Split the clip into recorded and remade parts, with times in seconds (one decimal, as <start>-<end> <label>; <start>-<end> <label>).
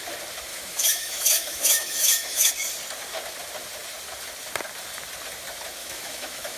0.0-0.5 recorded; 0.5-2.5 remade; 2.5-5.8 recorded; 5.8-6.6 remade